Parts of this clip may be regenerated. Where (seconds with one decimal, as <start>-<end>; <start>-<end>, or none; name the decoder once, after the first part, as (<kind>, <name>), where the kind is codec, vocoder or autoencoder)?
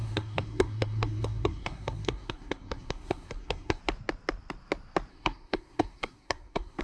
0.0-3.8 (codec, SNAC); 5.1-6.8